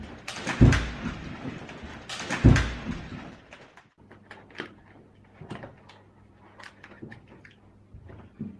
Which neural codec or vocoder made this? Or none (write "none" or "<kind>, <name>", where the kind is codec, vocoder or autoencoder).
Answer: none